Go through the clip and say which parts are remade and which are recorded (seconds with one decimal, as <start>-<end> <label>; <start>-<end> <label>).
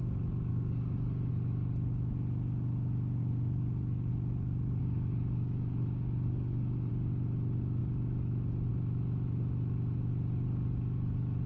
0.0-0.5 recorded; 0.5-1.3 remade; 1.3-3.2 recorded; 3.2-4.1 remade; 4.1-4.8 recorded; 4.8-6.9 remade; 6.9-11.5 recorded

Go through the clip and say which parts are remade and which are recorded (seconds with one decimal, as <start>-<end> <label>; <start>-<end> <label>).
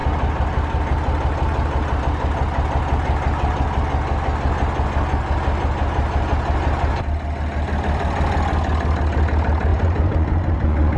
0.0-9.7 recorded; 9.7-11.0 remade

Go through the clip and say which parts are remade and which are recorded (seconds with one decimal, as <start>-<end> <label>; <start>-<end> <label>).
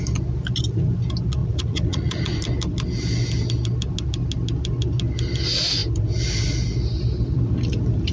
0.0-1.4 recorded; 1.4-2.2 remade; 2.2-8.1 recorded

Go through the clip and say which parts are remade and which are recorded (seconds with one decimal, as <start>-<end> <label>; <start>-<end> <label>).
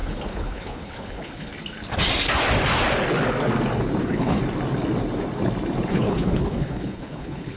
0.0-1.5 remade; 1.5-4.0 recorded; 4.0-4.4 remade; 4.4-5.9 recorded; 5.9-7.6 remade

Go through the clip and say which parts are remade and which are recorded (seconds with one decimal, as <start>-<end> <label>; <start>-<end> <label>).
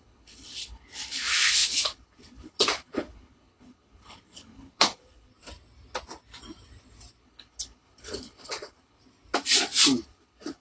0.0-5.3 remade; 5.3-7.2 recorded; 7.2-9.0 remade; 9.0-10.0 recorded; 10.0-10.6 remade